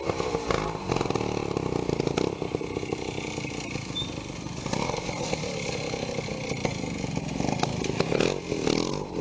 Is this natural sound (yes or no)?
yes